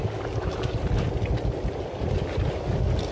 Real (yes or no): yes